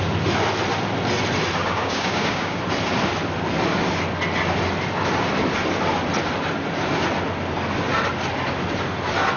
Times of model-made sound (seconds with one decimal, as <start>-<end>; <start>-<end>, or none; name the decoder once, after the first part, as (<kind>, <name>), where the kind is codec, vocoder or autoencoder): 1.6-2.6 (codec, DAC)